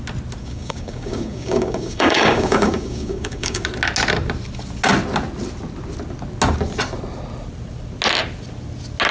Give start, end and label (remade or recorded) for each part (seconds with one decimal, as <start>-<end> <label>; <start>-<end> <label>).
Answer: 0.0-0.4 recorded; 0.4-3.6 remade; 3.6-9.1 recorded